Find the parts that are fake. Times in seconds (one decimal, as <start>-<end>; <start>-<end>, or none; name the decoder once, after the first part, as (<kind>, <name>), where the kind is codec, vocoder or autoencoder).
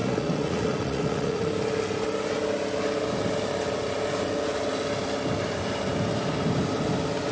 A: 0.0-1.5 (vocoder, Vocos)